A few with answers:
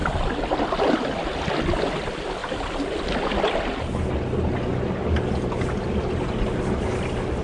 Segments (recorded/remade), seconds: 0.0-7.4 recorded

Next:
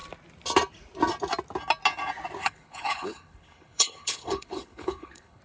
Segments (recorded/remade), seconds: 0.0-2.4 recorded; 2.4-5.4 remade

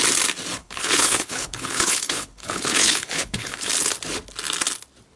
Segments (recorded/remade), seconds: 0.0-0.6 recorded; 0.6-3.7 remade; 3.7-5.2 recorded

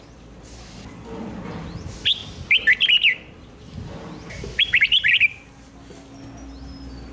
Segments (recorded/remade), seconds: 0.0-7.1 recorded

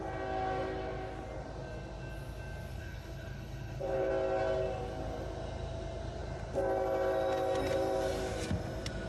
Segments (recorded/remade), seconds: 0.0-2.7 recorded; 2.7-4.1 remade; 4.1-9.1 recorded

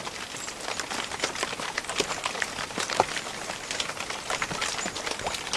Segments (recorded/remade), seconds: 0.0-5.6 recorded